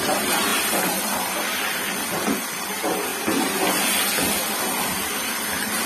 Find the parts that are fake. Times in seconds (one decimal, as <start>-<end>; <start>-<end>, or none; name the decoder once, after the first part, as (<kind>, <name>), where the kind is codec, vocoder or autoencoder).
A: 0.0-3.1 (vocoder, BigVGAN v2); 3.7-5.9